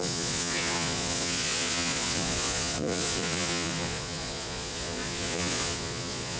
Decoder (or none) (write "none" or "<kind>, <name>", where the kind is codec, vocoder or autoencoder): vocoder, Vocos